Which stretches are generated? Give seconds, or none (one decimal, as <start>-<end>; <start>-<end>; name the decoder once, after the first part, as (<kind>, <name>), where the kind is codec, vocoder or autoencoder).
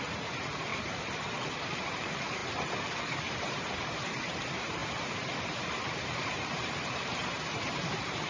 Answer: 0.0-0.7 (vocoder, BigVGAN v2); 1.6-2.4; 3.0-8.3